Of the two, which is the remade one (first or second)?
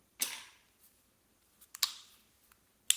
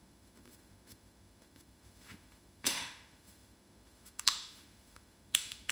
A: second